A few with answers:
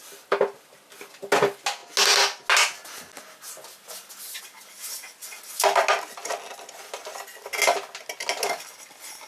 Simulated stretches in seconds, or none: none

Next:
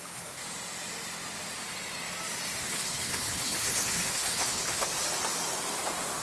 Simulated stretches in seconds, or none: 0.0-0.4 (codec, HILCodec); 2.6-4.9